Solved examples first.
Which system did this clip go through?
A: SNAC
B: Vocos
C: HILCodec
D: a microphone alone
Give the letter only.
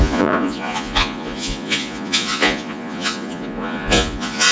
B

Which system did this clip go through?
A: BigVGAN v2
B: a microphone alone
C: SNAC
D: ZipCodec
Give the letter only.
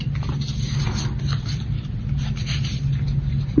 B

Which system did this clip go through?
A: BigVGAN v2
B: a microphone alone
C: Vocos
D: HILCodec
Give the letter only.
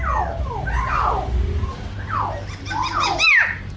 B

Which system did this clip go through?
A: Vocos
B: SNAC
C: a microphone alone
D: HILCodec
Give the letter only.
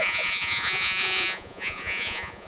A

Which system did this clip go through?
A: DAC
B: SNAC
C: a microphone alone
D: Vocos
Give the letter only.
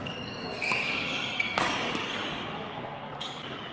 A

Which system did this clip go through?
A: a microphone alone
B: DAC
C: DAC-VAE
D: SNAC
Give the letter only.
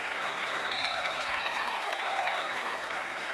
D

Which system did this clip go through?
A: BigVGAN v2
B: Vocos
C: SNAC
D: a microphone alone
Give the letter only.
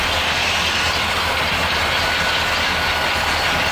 D